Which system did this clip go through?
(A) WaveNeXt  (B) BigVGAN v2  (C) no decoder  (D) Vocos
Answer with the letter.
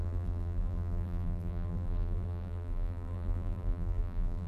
B